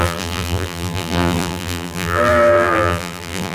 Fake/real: fake